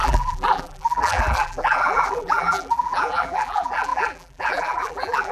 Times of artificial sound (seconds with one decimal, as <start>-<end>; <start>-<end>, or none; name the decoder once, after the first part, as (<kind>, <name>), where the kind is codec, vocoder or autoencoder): 0.0-5.3 (vocoder, BigVGAN v2)